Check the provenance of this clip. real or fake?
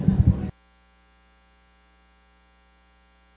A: real